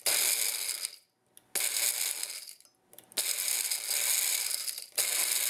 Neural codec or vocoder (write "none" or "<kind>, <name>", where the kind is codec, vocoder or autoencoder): none